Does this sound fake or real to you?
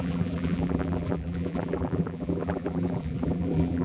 fake